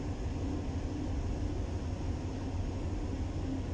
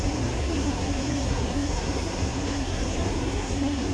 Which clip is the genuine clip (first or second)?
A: first